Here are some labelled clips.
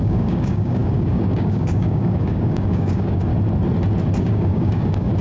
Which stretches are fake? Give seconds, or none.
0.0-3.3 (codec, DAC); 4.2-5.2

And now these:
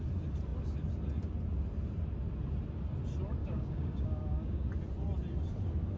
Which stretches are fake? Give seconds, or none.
3.4-4.7 (codec, DAC)